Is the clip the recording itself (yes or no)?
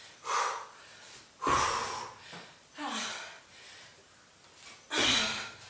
yes